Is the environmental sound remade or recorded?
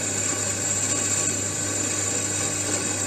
recorded